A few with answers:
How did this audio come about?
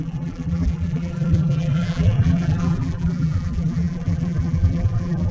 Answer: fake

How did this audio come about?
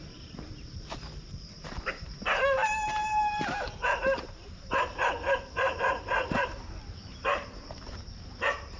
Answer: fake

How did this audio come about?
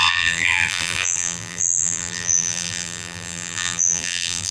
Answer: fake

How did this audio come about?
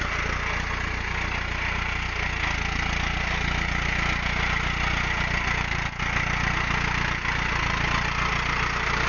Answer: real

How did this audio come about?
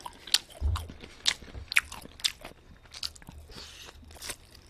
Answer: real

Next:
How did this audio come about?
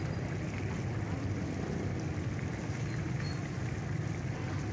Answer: real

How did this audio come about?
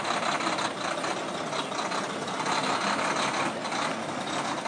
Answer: fake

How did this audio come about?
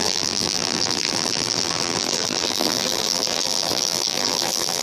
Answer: fake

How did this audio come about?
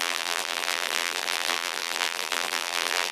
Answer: fake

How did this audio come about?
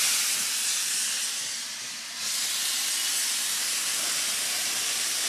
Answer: real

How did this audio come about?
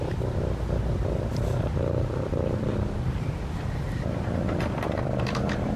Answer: fake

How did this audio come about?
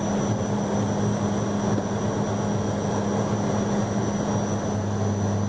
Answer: real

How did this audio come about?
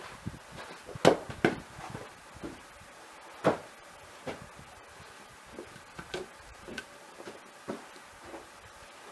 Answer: real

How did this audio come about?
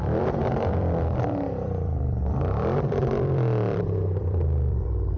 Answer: fake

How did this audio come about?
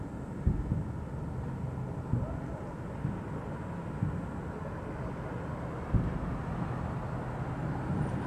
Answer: real